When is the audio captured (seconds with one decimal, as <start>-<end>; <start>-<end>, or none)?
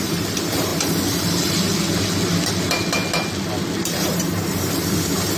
0.7-3.9